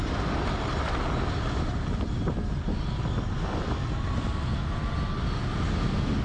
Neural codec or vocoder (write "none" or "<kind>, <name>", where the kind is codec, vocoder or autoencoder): none